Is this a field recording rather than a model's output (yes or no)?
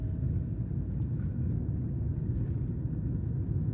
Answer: yes